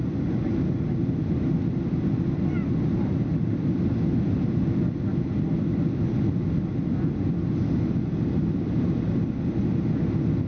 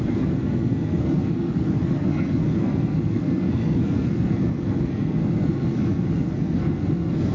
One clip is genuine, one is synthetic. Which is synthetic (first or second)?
second